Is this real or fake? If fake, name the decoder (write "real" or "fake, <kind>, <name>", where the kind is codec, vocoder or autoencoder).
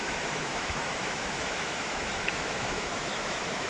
fake, autoencoder, DAC-VAE